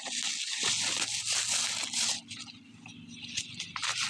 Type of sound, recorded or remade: recorded